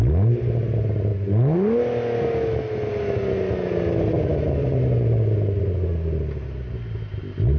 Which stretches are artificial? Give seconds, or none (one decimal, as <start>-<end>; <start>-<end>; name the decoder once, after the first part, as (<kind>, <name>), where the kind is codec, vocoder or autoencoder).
none